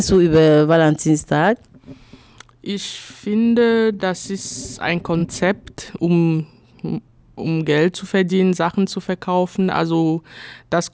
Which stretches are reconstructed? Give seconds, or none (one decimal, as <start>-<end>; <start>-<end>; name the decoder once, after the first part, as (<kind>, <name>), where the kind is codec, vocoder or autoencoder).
none